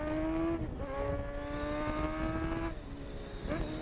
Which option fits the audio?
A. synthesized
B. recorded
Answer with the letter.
B